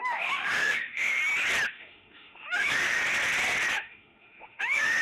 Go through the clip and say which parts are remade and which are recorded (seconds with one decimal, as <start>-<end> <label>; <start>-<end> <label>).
0.0-1.2 remade; 1.2-1.7 recorded; 1.7-3.0 remade; 3.0-3.7 recorded; 3.7-5.0 remade